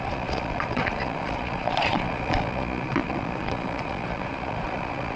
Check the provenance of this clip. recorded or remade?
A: remade